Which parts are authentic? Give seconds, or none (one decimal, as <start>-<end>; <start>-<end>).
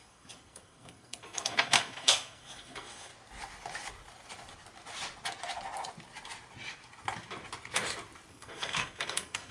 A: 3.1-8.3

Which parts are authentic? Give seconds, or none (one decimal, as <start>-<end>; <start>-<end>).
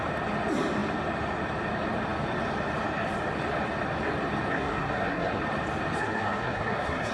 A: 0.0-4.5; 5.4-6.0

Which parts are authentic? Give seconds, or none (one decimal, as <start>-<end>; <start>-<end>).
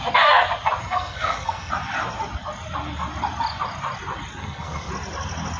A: 0.0-0.8; 1.7-4.4; 4.9-5.6